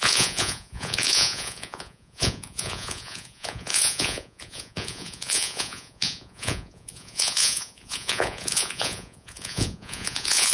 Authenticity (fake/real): fake